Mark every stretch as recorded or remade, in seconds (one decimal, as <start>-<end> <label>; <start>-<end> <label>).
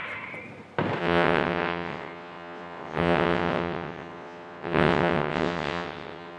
0.0-1.0 recorded; 1.0-6.4 remade